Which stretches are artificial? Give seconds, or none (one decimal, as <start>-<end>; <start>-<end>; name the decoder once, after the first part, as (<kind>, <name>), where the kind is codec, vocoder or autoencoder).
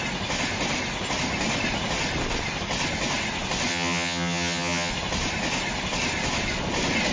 3.7-4.9 (vocoder, HiFi-GAN)